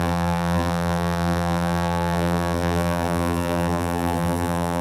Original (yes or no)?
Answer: no